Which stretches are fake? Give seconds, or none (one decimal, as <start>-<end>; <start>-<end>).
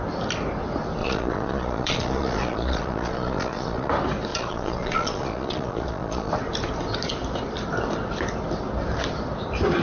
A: 1.0-3.9; 4.3-6.3